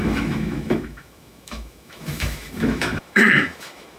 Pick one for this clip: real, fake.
fake